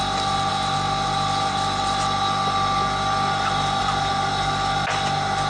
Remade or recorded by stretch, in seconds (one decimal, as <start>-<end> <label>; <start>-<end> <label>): 0.0-5.5 recorded